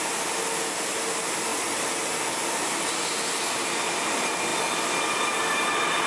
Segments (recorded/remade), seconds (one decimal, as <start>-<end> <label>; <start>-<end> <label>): 0.0-6.1 recorded